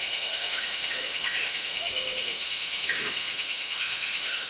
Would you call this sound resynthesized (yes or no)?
yes